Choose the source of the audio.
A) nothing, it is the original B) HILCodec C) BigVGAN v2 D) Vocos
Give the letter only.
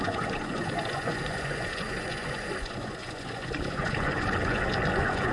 D